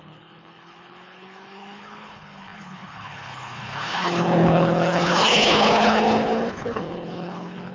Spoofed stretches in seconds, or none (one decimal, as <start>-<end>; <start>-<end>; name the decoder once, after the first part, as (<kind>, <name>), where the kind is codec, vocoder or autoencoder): 0.0-7.7 (codec, HILCodec)